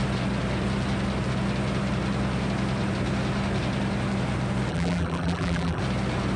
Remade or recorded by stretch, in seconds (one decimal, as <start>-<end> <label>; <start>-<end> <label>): 0.0-4.7 recorded; 4.7-5.8 remade; 5.8-6.4 recorded